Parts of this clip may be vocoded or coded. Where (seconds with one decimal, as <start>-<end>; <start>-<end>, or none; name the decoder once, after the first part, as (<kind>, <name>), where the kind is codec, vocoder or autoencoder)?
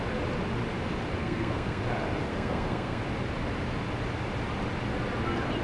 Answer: 1.2-1.8 (codec, SNAC); 2.2-3.0